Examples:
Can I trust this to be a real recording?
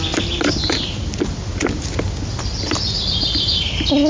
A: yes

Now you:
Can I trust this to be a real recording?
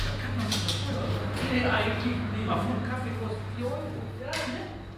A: yes